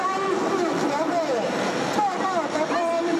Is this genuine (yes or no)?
no